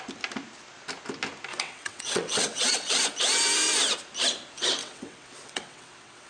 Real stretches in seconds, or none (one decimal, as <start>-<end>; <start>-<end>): 0.0-1.5; 3.0-4.8